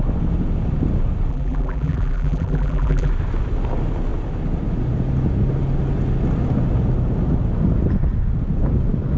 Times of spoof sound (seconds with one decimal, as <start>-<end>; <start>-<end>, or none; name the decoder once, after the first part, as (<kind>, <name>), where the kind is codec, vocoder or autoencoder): 1.3-3.1 (vocoder, BigVGAN v2)